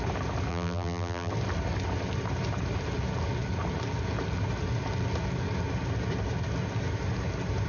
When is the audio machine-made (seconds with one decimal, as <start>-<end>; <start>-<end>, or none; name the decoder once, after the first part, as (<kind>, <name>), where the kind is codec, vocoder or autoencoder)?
0.5-1.3 (vocoder, BigVGAN v2)